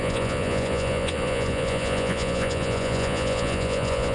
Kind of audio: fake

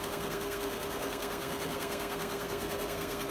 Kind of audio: fake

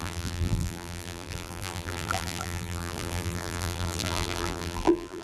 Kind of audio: fake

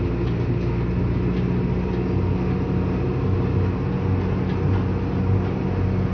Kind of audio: real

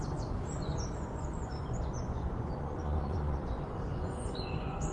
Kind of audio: fake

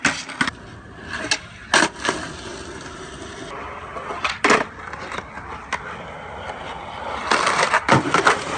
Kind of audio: real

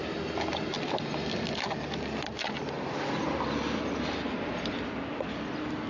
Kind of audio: real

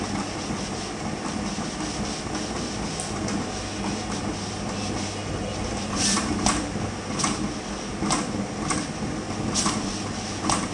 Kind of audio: real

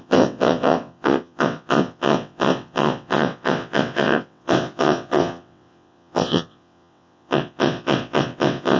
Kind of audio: fake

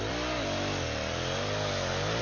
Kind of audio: real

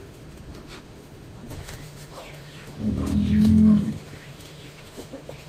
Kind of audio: fake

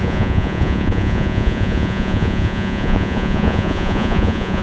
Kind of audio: fake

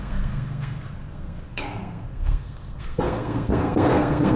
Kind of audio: fake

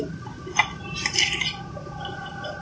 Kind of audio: real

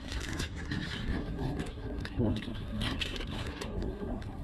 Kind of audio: fake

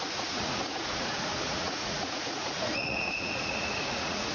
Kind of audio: fake